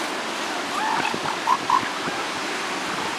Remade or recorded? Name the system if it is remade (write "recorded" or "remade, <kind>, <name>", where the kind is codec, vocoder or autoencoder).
recorded